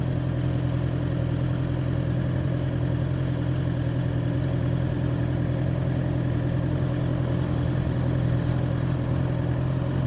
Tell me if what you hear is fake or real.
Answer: real